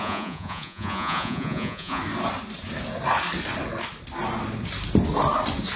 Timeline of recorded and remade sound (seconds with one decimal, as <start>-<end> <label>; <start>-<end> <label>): 0.0-2.0 remade; 2.0-5.8 recorded